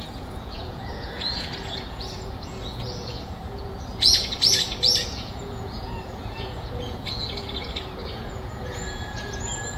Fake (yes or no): yes